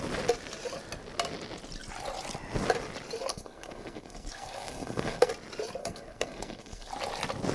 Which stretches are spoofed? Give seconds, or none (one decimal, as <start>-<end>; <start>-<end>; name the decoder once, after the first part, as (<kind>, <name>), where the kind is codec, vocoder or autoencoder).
3.3-5.3 (codec, SNAC); 5.8-6.9

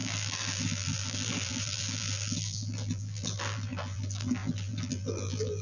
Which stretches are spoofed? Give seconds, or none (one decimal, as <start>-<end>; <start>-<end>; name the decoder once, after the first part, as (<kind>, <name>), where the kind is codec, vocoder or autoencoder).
0.0-5.6 (vocoder, BigVGAN v2)